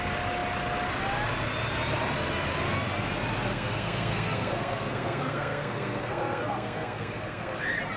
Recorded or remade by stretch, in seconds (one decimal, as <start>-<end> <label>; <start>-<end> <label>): 0.0-3.5 recorded; 3.5-7.6 remade; 7.6-8.0 recorded